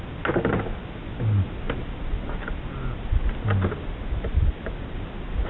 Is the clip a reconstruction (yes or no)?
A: no